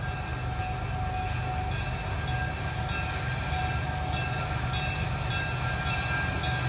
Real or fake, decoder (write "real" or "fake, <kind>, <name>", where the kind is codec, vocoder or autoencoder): real